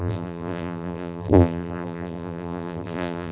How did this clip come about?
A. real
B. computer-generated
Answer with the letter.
B